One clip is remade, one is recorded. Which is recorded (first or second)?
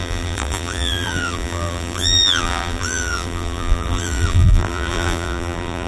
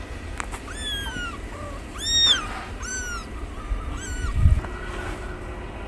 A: second